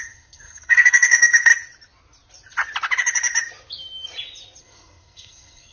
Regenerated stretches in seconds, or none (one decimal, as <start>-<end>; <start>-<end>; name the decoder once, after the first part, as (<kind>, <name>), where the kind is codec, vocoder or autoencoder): 0.0-1.5 (codec, SNAC); 4.6-5.7